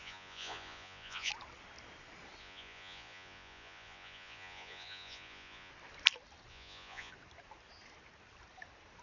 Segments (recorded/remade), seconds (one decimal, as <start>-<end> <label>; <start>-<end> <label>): 0.0-1.3 remade; 1.3-2.4 recorded; 2.4-5.7 remade; 5.7-6.5 recorded; 6.5-7.1 remade; 7.1-9.0 recorded